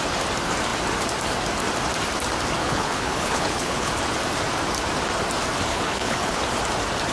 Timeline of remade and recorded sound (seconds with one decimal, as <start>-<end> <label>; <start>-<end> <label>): 0.0-2.6 recorded; 2.6-3.9 remade; 3.9-5.7 recorded; 5.7-6.4 remade; 6.4-7.1 recorded